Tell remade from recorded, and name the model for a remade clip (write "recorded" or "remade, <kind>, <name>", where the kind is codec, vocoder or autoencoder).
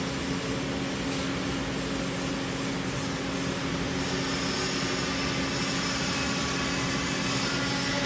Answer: recorded